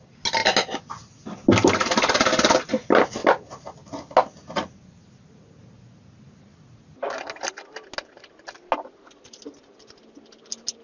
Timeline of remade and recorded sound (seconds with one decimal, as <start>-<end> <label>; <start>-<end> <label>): 0.0-10.8 recorded